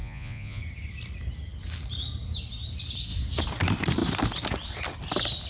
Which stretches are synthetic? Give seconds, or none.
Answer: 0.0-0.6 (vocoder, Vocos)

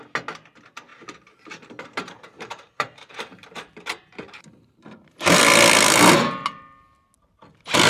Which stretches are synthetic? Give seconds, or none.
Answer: 0.9-5.4 (vocoder, BigVGAN v2)